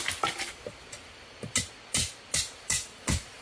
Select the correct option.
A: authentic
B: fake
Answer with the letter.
A